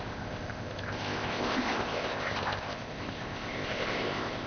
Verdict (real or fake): fake